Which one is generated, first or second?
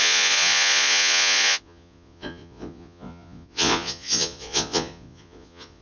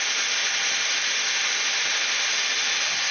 first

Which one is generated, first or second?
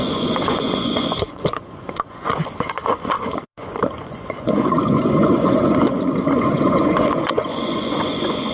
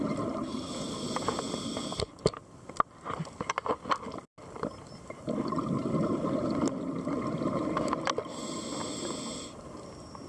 first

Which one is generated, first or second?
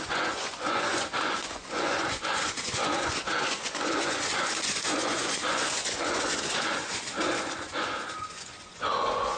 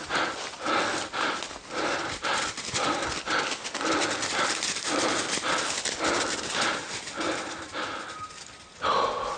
first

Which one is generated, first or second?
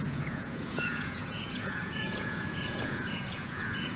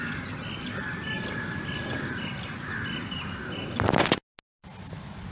first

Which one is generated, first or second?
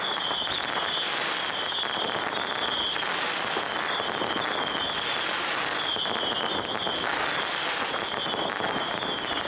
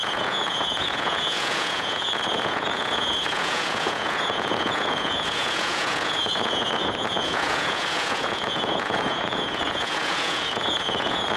second